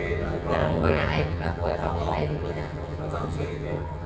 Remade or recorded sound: remade